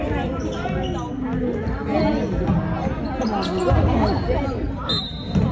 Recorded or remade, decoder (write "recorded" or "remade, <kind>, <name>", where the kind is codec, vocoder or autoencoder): recorded